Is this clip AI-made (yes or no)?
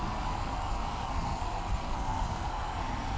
yes